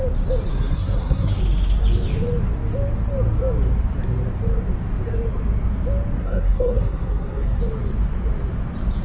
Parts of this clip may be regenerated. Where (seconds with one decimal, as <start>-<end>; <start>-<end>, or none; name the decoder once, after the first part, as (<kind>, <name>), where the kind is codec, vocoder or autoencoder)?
0.5-1.4 (codec, SNAC); 6.2-7.6